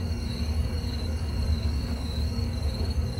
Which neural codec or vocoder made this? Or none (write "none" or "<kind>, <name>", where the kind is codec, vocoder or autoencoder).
codec, DAC